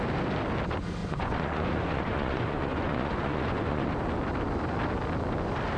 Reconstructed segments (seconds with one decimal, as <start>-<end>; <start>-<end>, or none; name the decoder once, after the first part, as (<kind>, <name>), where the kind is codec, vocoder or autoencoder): 1.0-3.9 (vocoder, Vocos)